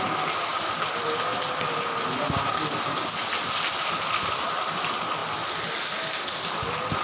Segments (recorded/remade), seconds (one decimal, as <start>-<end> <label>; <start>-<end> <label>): 0.0-7.0 recorded